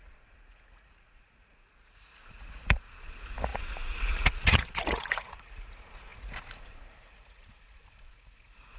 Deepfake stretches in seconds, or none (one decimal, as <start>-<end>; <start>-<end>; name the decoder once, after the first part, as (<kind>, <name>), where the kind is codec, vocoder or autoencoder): 0.0-8.8 (vocoder, Vocos)